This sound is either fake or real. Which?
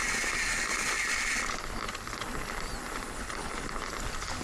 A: real